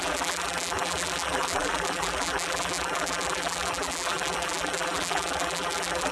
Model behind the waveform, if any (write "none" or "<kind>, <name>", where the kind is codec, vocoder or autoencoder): vocoder, BigVGAN v2